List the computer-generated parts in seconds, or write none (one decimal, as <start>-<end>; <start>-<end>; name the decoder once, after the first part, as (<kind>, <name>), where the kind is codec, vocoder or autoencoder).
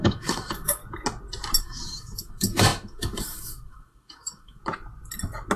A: 0.0-0.8 (autoencoder, DAC-VAE); 1.6-4.6